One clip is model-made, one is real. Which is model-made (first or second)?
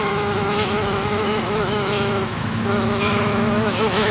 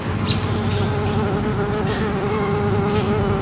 first